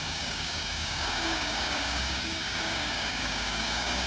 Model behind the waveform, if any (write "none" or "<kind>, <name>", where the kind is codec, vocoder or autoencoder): codec, DAC